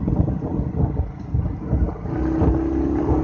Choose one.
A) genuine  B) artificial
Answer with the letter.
A